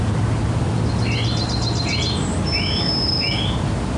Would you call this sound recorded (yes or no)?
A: yes